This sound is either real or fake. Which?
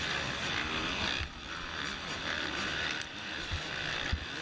real